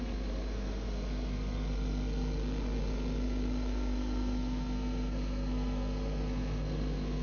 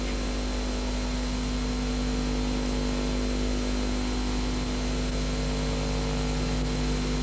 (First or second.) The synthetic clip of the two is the first